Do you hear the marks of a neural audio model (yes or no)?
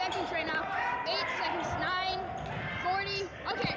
no